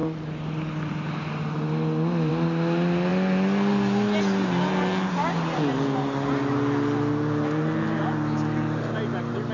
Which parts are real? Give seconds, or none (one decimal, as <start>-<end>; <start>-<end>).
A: 0.0-9.5

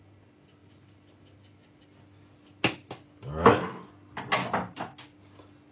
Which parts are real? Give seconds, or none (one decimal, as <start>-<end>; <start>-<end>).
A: 0.0-5.7

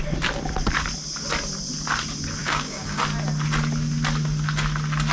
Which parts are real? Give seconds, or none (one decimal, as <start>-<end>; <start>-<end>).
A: 0.0-2.4; 3.0-5.1

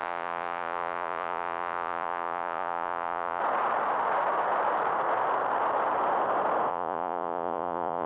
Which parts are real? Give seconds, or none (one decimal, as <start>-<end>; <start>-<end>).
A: 3.4-6.7

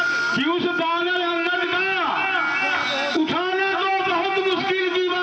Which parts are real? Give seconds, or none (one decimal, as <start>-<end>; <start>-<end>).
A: 0.0-5.2

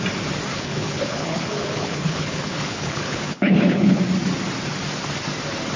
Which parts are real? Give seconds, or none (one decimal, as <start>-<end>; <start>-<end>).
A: 0.0-0.5; 4.0-5.8

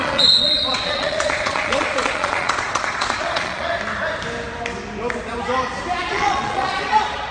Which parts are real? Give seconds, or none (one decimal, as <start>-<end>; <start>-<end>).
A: 3.7-6.1